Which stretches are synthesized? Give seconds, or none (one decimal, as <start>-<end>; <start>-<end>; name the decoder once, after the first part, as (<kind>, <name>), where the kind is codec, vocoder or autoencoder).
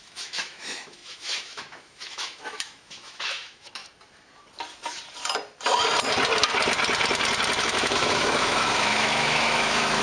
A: 0.0-3.8 (autoencoder, DAC-VAE); 7.6-10.0